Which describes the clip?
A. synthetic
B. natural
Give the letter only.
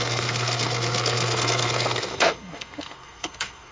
A